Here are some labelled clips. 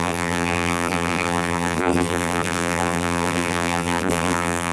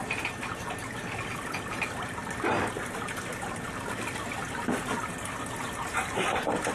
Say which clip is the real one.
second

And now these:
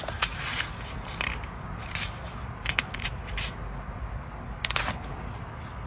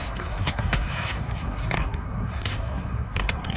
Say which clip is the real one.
first